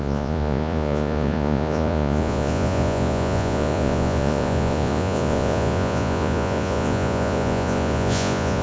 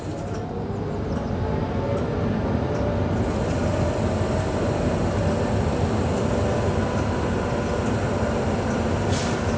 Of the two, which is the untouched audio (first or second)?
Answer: second